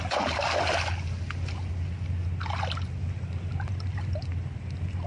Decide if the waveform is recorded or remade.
recorded